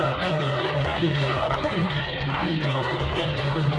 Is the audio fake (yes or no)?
yes